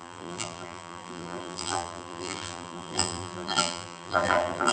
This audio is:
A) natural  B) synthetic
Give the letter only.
B